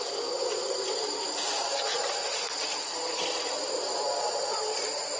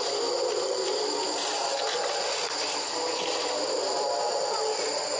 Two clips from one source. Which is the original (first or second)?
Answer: second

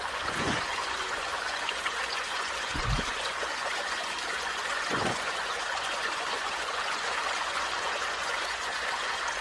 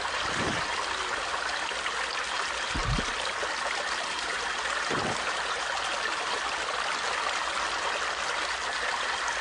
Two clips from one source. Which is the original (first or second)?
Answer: second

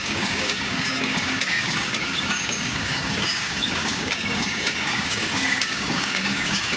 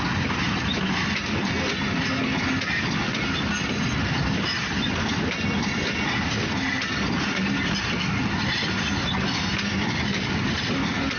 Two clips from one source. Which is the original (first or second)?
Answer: second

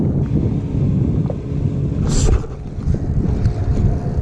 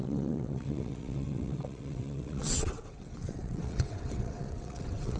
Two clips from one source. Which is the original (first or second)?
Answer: first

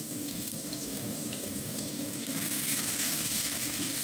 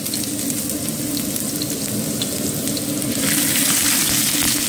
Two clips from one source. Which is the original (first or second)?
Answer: second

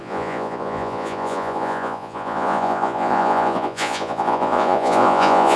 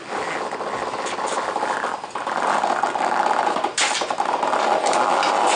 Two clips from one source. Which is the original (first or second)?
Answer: second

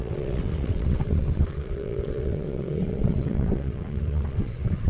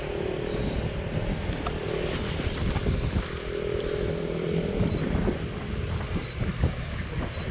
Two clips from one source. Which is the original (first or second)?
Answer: second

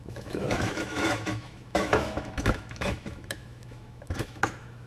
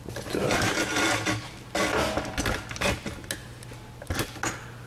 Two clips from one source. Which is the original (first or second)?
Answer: second